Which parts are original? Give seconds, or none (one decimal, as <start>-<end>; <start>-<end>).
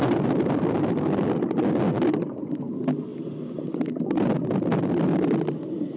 0.0-6.0